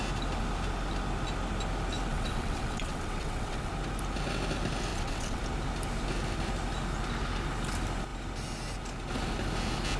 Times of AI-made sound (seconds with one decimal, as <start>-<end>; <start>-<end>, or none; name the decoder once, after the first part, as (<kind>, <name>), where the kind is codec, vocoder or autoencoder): 2.1-3.7 (vocoder, WaveNeXt); 4.9-5.4